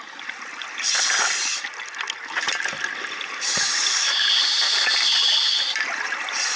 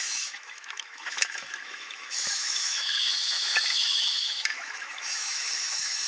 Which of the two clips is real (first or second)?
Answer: first